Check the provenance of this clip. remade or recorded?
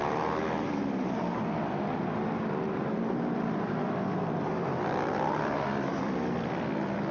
remade